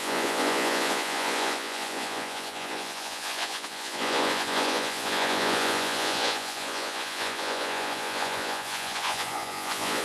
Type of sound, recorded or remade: remade